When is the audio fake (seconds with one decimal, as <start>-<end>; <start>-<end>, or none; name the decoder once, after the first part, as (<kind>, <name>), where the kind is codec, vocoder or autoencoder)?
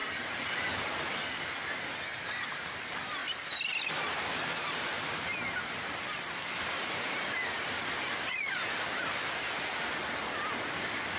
0.0-1.5 (vocoder, BigVGAN v2)